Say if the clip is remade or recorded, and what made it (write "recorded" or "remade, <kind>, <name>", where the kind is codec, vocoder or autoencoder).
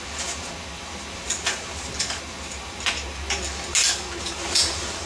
recorded